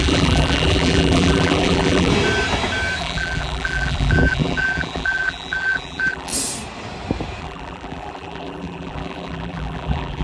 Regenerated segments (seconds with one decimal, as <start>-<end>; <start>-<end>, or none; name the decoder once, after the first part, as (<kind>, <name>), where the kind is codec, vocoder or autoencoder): 0.0-2.1 (vocoder, BigVGAN v2); 3.0-6.3; 7.4-10.2